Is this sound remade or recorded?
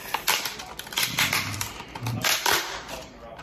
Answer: remade